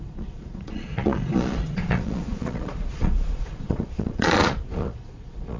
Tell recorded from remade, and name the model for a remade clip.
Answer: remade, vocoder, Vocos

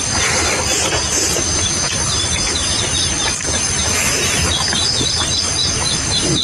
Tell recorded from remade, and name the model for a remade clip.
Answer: recorded